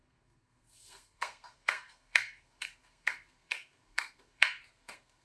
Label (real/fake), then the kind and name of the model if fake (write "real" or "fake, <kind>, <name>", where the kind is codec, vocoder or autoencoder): fake, codec, SNAC